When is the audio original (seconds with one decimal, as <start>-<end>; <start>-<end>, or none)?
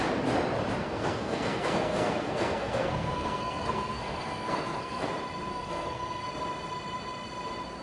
0.0-0.8; 5.1-5.5; 6.3-7.8